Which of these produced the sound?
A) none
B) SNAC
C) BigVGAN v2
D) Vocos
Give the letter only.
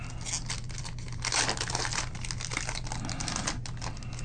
A